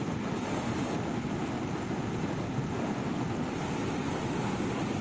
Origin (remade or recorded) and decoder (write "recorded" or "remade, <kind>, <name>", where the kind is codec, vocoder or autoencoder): recorded